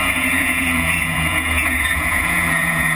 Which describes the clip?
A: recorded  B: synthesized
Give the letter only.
B